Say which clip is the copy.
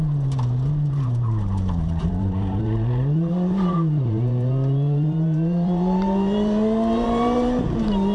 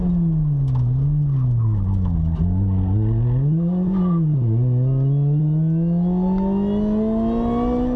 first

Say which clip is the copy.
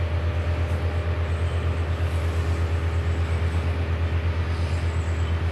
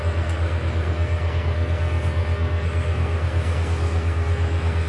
second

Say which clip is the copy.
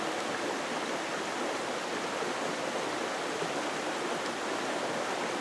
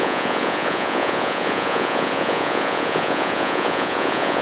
second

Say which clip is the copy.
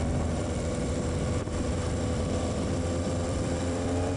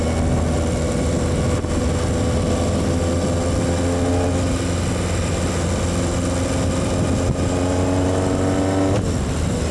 first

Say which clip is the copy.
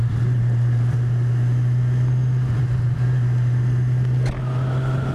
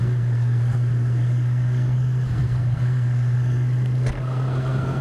second